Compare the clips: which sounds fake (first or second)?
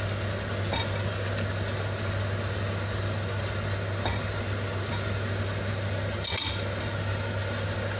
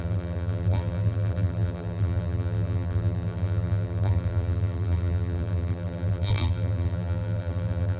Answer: second